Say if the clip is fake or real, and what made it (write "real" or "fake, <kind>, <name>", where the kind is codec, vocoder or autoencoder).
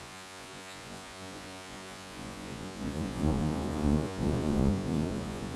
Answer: fake, vocoder, Vocos